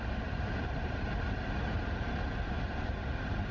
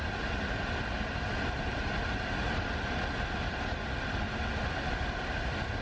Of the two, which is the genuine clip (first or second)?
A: second